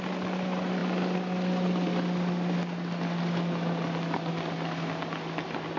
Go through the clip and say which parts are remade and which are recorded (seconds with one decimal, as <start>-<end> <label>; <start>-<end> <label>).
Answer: 0.0-5.8 recorded

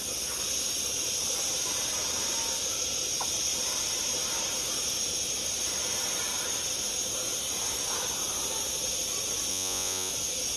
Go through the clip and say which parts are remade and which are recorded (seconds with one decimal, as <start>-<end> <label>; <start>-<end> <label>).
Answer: 0.0-9.5 recorded; 9.5-10.1 remade; 10.1-10.6 recorded

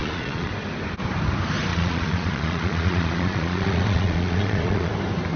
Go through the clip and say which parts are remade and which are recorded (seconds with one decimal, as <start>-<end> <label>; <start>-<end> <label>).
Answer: 0.0-0.5 remade; 0.5-1.7 recorded; 1.7-4.9 remade; 4.9-5.4 recorded

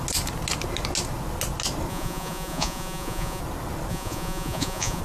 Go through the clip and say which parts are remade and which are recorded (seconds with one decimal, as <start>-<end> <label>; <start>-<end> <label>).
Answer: 0.0-1.9 recorded; 1.9-3.4 remade; 3.4-3.9 recorded; 3.9-5.0 remade